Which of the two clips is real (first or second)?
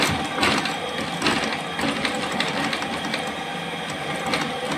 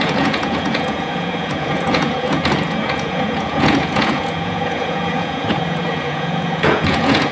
first